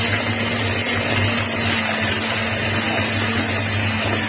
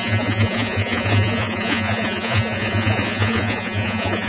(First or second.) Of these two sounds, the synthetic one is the second